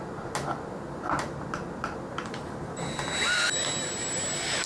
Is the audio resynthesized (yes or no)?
no